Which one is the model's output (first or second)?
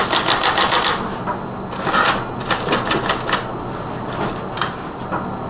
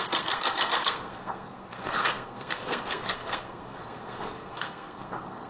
second